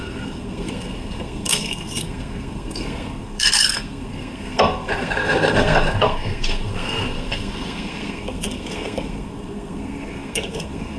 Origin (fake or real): fake